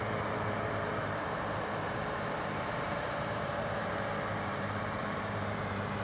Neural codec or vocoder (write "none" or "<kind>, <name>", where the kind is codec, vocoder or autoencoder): vocoder, BigVGAN v2